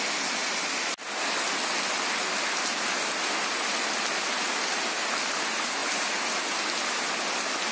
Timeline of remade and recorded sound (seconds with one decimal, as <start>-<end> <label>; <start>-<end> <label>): 0.0-7.7 recorded